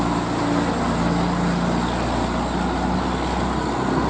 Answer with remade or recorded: recorded